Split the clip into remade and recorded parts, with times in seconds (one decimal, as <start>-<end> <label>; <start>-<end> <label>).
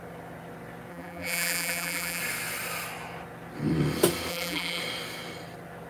0.0-0.9 recorded; 0.9-2.2 remade; 2.2-4.3 recorded; 4.3-4.8 remade; 4.8-5.9 recorded